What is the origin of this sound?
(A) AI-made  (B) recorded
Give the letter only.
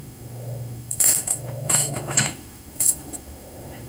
A